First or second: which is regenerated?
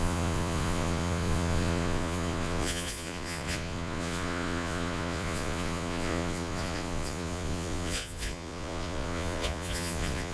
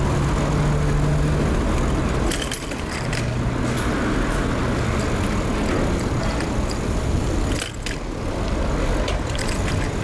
first